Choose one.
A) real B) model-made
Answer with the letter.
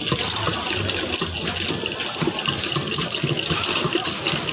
A